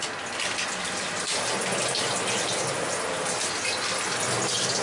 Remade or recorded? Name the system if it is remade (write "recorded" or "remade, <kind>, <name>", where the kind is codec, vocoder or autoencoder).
recorded